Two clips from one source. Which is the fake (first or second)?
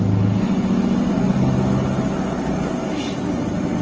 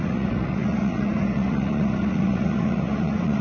second